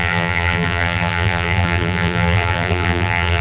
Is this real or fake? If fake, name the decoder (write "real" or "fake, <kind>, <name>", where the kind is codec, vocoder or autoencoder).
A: fake, vocoder, BigVGAN v2